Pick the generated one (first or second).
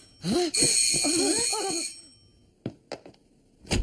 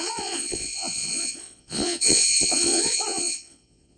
second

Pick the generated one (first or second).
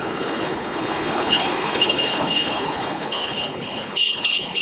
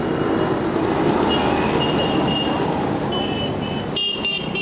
first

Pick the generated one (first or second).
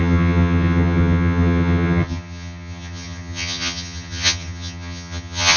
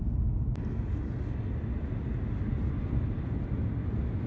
first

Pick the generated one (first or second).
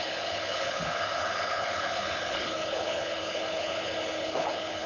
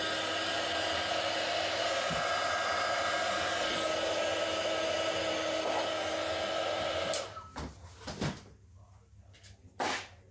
first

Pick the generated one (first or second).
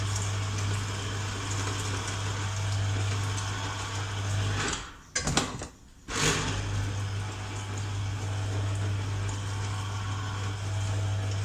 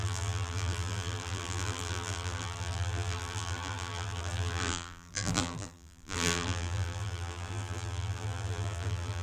second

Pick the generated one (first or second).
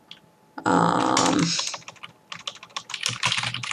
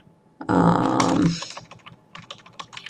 second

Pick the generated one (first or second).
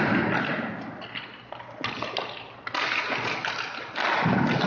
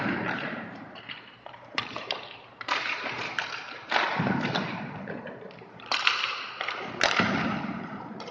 second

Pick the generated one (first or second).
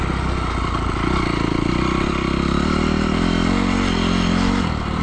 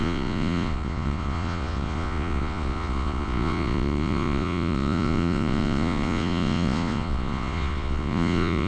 second